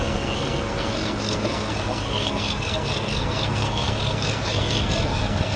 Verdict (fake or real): fake